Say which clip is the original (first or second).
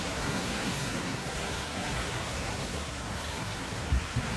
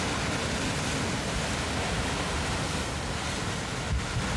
second